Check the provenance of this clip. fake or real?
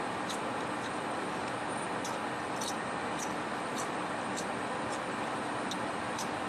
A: real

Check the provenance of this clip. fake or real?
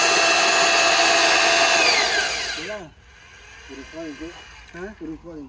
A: real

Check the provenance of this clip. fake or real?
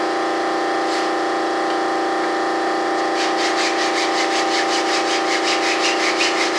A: real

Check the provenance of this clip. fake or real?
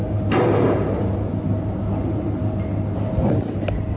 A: real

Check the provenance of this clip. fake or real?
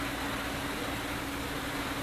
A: real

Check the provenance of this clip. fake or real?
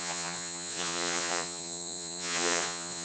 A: fake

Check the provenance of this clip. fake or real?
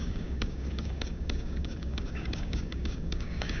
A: fake